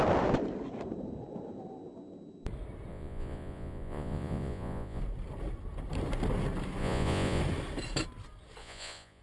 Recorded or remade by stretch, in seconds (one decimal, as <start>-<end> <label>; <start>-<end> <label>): 0.0-2.9 recorded; 2.9-5.0 remade; 5.0-6.8 recorded; 6.8-7.4 remade; 7.4-8.6 recorded; 8.6-9.2 remade